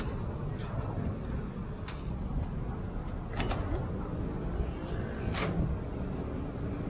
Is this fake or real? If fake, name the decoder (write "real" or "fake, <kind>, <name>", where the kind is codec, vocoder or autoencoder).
real